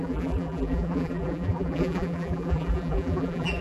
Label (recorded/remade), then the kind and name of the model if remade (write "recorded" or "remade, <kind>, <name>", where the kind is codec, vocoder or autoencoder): remade, vocoder, BigVGAN v2